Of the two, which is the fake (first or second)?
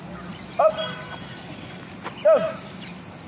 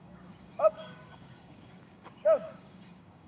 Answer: second